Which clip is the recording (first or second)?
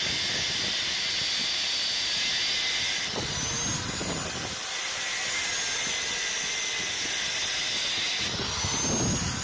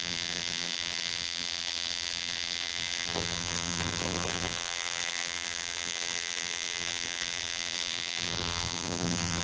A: first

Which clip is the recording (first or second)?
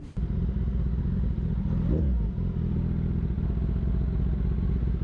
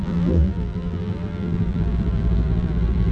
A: first